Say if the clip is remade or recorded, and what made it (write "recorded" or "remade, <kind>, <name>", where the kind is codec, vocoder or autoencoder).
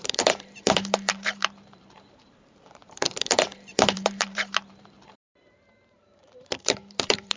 remade, vocoder, BigVGAN v2